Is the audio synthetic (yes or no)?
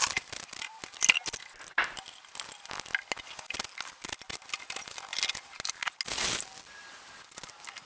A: no